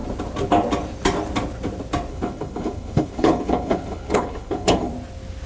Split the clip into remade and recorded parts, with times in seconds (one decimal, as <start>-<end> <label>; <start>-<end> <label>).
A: 0.0-2.1 recorded; 2.1-4.9 remade; 4.9-5.5 recorded